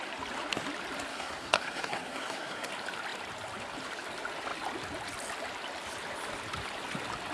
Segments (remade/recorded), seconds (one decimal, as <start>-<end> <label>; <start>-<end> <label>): 0.0-1.1 recorded; 1.1-2.7 remade; 2.7-7.3 recorded